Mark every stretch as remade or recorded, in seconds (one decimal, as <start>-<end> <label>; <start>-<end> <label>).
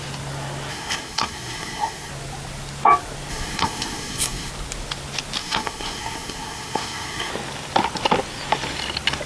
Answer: 0.0-0.7 recorded; 0.7-2.1 remade; 2.1-3.3 recorded; 3.3-4.5 remade; 4.5-5.4 recorded; 5.4-7.3 remade; 7.3-9.3 recorded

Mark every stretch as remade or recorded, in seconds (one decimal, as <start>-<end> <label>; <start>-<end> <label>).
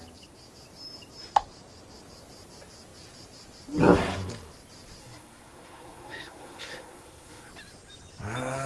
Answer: 0.0-5.0 recorded; 5.0-7.5 remade; 7.5-8.7 recorded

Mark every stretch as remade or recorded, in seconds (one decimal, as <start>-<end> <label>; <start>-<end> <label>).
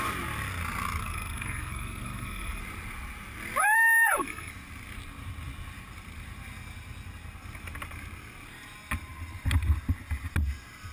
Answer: 0.0-1.0 recorded; 1.0-2.6 remade; 2.6-3.6 recorded; 3.6-4.5 remade; 4.5-10.9 recorded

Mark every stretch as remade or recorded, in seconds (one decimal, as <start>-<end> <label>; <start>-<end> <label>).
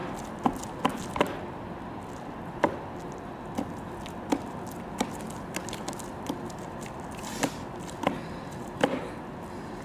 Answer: 0.0-9.8 recorded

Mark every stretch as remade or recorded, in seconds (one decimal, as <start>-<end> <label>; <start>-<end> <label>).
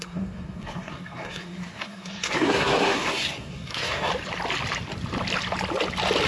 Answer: 0.0-4.1 remade; 4.1-6.3 recorded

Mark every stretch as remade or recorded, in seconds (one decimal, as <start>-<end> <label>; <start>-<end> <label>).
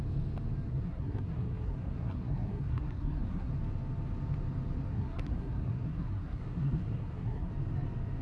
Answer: 0.0-0.7 recorded; 0.7-3.5 remade; 3.5-4.9 recorded; 4.9-7.5 remade; 7.5-8.2 recorded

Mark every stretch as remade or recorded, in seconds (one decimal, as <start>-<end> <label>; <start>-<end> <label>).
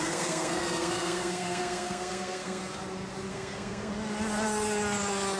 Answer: 0.0-2.6 remade; 2.6-3.3 recorded; 3.3-3.9 remade; 3.9-5.4 recorded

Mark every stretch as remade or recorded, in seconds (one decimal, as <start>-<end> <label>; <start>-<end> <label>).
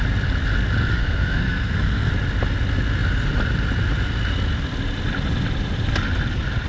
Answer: 0.0-0.9 recorded; 0.9-2.1 remade; 2.1-6.7 recorded